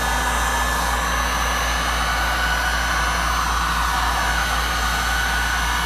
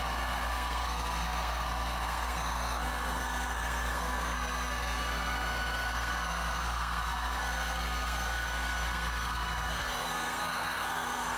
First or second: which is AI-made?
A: second